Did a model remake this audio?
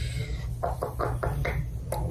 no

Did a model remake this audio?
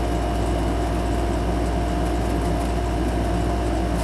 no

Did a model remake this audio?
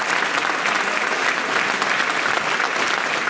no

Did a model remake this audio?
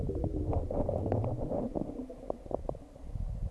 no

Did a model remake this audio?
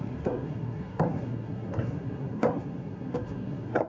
yes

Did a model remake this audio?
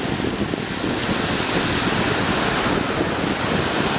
no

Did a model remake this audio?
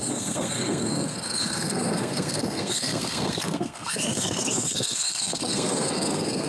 yes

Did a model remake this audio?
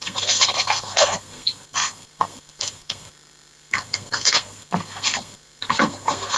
yes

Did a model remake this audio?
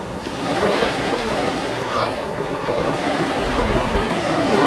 yes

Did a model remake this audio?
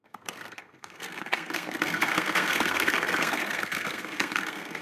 yes